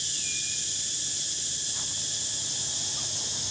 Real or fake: real